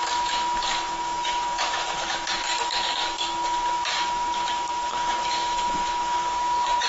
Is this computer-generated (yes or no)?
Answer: yes